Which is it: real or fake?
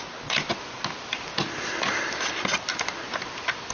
real